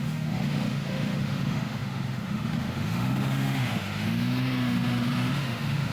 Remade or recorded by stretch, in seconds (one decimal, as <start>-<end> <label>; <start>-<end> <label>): 0.0-5.9 remade